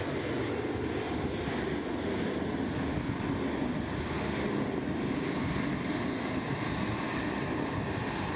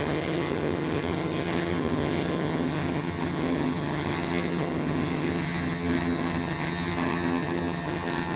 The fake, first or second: second